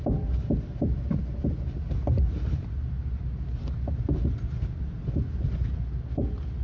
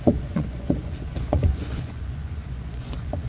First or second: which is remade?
second